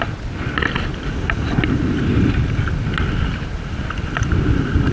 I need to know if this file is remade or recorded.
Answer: recorded